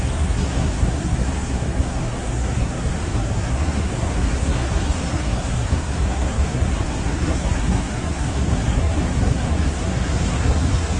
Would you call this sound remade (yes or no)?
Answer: yes